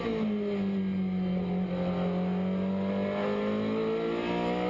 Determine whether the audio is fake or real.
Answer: real